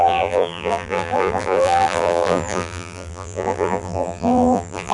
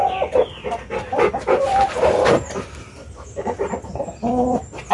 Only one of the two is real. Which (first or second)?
second